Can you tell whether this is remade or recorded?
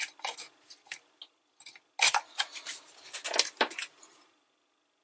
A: recorded